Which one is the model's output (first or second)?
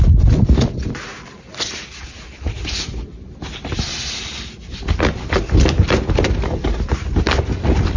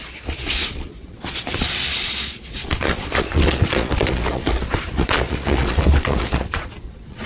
second